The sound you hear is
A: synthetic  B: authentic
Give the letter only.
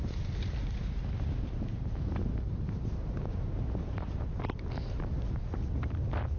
B